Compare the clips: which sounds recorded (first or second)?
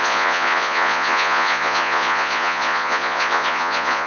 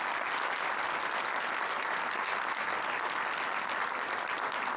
second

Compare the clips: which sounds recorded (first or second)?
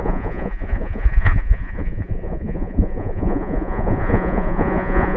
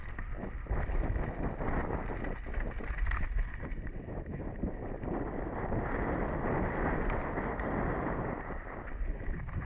second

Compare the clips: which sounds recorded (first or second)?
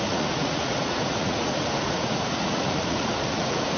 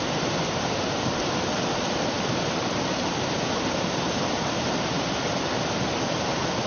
second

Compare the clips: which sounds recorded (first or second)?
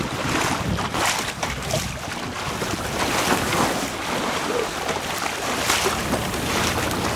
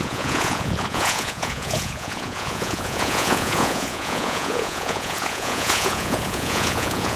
first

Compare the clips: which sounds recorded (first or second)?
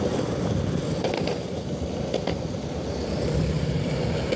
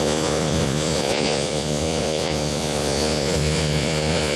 first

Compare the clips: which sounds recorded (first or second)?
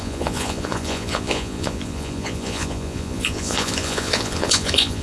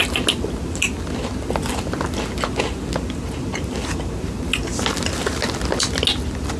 second